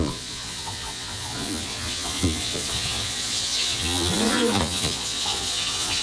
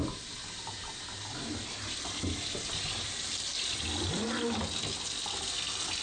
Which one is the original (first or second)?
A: second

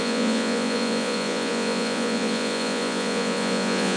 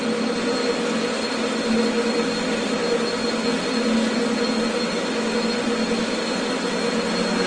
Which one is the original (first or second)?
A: second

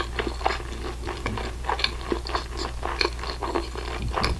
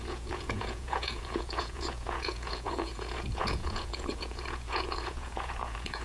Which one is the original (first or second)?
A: first